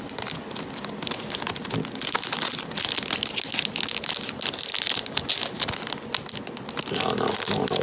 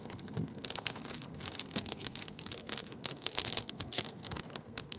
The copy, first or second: second